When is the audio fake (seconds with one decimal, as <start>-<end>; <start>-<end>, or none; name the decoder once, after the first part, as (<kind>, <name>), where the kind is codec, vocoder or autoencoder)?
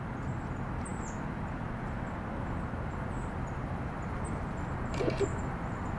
none